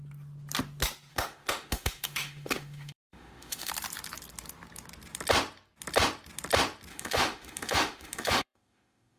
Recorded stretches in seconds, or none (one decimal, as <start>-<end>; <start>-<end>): 0.0-1.1; 3.7-6.9